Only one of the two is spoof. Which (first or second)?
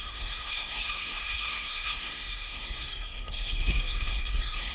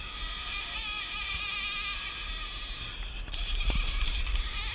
first